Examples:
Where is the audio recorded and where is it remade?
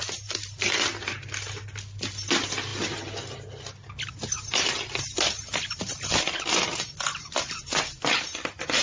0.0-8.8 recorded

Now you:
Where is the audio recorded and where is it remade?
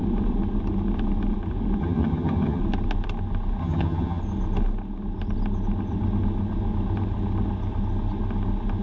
0.0-1.8 recorded; 1.8-2.6 remade; 2.6-3.6 recorded; 3.6-4.2 remade; 4.2-8.8 recorded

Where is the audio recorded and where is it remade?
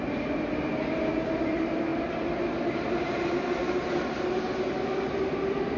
0.0-5.8 recorded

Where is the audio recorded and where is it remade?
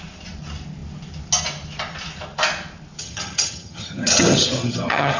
0.0-3.0 recorded; 3.0-5.2 remade